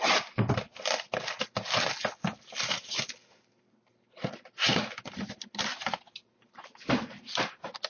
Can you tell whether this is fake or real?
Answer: real